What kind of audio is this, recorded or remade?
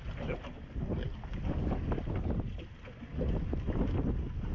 recorded